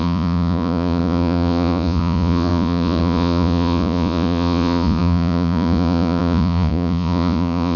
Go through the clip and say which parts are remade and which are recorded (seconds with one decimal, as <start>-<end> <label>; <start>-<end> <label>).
0.0-7.8 remade